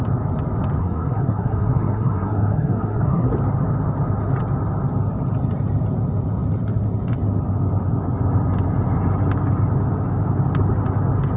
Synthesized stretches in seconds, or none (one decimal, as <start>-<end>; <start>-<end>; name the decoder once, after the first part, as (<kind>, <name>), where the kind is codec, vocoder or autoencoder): 0.8-3.3 (codec, SNAC)